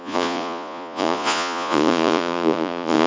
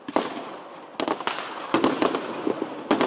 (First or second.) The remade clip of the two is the first